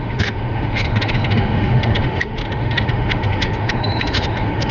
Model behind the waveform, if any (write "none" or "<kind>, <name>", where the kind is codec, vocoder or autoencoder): autoencoder, DAC-VAE